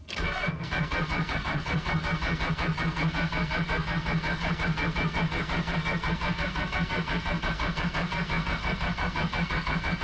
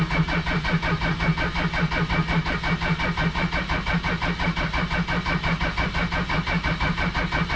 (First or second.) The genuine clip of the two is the second